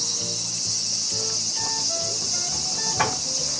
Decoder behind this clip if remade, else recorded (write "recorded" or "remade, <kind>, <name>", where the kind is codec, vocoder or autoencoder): recorded